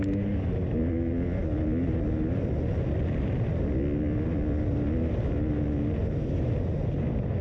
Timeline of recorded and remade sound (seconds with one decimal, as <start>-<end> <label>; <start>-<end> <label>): 0.0-7.4 recorded